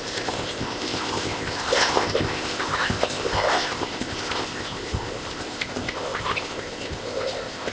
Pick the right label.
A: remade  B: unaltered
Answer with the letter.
A